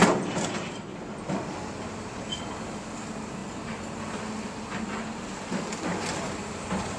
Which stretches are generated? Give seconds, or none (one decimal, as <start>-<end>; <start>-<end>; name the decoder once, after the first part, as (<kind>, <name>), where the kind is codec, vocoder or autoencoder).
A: 0.9-1.7 (vocoder, BigVGAN v2)